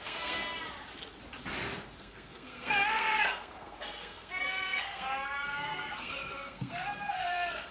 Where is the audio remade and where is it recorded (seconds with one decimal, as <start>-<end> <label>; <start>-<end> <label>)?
0.0-0.4 remade; 0.4-2.0 recorded; 2.0-7.7 remade